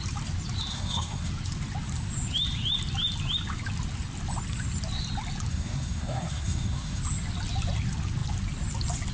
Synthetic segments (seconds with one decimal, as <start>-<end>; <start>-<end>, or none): 0.7-1.3; 5.5-7.0